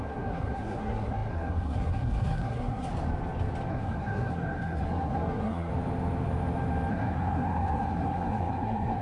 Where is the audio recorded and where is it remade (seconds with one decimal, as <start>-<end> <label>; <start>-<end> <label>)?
0.0-2.9 remade; 2.9-3.7 recorded; 3.7-5.7 remade; 5.7-6.9 recorded; 6.9-9.0 remade